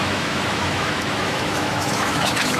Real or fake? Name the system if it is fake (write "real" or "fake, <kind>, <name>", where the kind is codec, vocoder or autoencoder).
fake, autoencoder, DAC-VAE